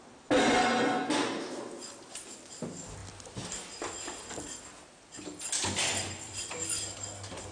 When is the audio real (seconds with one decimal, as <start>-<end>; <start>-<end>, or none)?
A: 0.0-7.5